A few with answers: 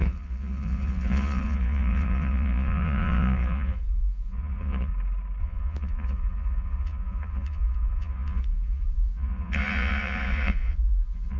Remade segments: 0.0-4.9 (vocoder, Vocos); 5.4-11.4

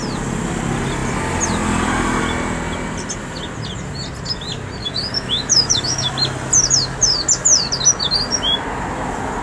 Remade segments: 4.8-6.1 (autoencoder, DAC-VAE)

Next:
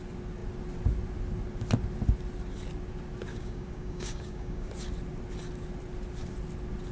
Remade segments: 3.3-4.7 (codec, DAC)